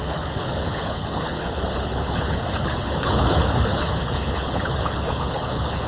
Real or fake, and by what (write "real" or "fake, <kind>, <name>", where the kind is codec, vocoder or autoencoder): fake, codec, HILCodec